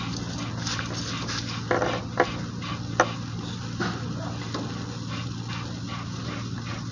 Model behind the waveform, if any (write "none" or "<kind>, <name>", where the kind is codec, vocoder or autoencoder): none